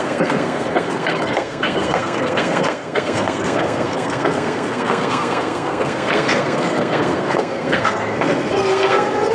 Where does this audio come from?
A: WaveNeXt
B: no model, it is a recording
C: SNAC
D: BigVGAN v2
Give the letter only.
C